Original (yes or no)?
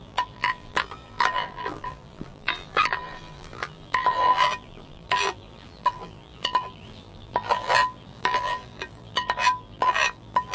no